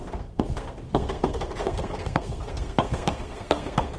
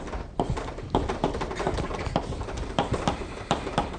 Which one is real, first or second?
second